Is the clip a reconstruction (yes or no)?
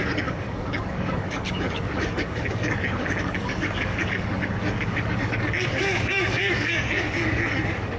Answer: yes